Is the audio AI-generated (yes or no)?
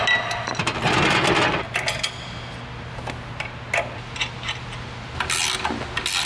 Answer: no